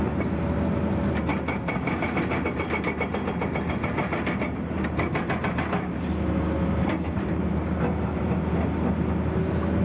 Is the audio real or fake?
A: real